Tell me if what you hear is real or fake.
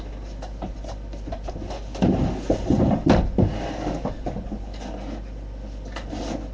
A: real